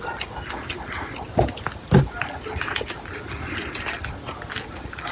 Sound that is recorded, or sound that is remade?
recorded